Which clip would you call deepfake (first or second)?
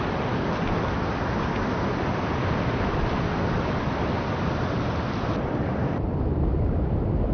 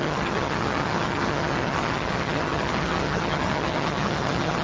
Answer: second